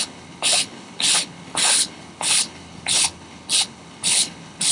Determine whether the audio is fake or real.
fake